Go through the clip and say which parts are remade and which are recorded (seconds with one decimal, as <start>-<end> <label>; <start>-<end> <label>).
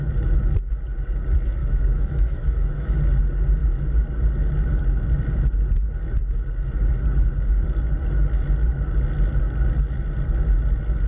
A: 0.0-1.6 recorded; 1.6-3.0 remade; 3.0-11.1 recorded